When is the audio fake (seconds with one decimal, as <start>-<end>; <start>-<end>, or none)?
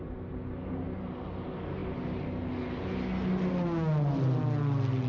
none